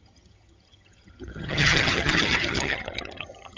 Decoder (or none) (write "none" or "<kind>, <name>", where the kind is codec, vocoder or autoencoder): vocoder, HiFi-GAN